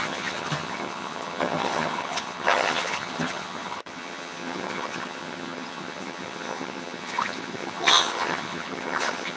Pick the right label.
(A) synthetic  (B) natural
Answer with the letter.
A